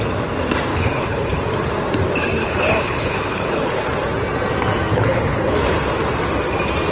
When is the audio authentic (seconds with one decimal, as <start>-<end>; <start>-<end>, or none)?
0.0-0.7; 1.4-2.4; 3.8-4.9; 5.6-6.9